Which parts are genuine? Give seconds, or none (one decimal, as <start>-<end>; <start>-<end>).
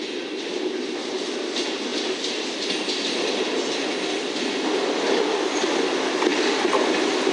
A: 0.0-7.3